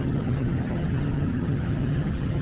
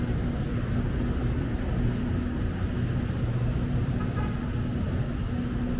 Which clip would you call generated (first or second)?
first